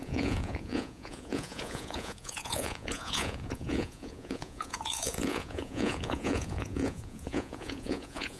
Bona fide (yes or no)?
no